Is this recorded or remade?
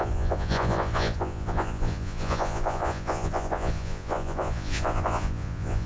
remade